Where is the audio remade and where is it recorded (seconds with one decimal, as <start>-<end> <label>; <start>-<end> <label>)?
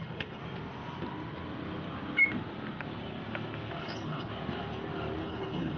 0.0-0.4 remade; 0.4-3.8 recorded; 3.8-4.3 remade; 4.3-5.2 recorded; 5.2-5.8 remade